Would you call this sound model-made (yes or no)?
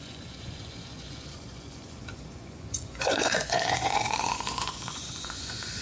yes